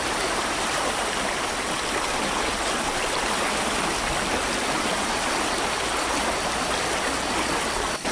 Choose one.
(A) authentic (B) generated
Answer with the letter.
A